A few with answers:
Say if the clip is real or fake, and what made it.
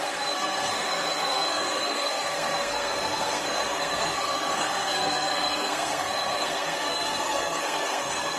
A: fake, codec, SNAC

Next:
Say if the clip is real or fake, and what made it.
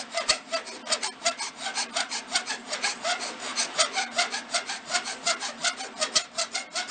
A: real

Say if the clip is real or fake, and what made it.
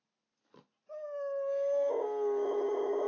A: real